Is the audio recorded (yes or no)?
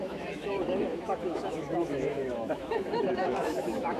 no